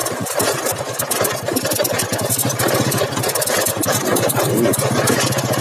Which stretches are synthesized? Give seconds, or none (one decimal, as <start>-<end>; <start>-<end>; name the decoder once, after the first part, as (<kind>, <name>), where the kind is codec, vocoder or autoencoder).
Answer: 0.0-0.8 (vocoder, BigVGAN v2)